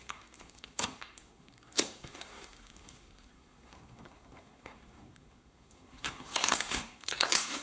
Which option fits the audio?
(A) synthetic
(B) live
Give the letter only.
A